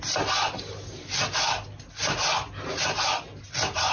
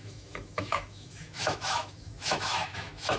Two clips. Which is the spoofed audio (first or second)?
second